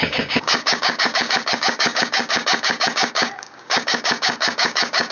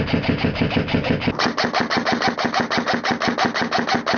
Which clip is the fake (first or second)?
first